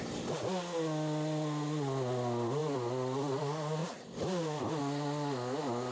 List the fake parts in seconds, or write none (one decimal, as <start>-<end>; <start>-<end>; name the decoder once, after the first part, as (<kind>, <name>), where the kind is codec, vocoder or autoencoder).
none